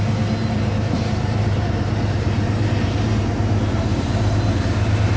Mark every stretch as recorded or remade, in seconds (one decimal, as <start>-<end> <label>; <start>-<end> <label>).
0.0-0.4 recorded; 0.4-3.2 remade; 3.2-3.9 recorded; 3.9-4.6 remade; 4.6-5.2 recorded